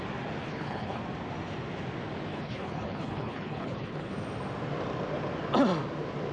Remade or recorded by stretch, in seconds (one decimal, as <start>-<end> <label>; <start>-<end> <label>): 0.0-0.4 recorded; 0.4-1.0 remade; 1.0-2.3 recorded; 2.3-4.1 remade; 4.1-6.3 recorded